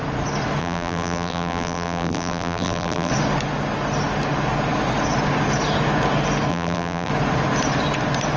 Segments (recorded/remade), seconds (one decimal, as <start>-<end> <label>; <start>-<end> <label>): 0.0-0.6 recorded; 0.6-3.1 remade; 3.1-6.5 recorded; 6.5-7.1 remade; 7.1-8.4 recorded